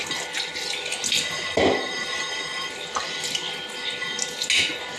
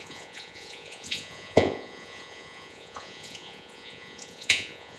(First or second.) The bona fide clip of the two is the first